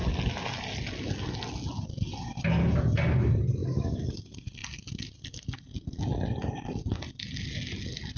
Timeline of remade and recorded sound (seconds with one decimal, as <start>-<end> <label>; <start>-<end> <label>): 0.0-3.6 recorded; 3.6-4.1 remade; 4.1-8.2 recorded